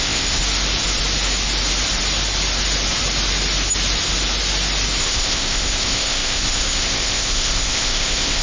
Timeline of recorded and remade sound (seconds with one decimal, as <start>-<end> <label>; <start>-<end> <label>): 0.0-0.4 remade; 0.4-5.0 recorded; 5.0-8.4 remade